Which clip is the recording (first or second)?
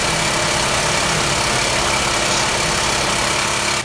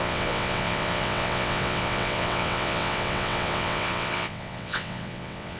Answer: first